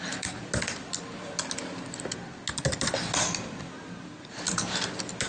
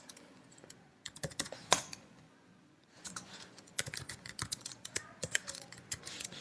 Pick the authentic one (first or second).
first